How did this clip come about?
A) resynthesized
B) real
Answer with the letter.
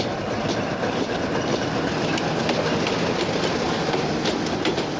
B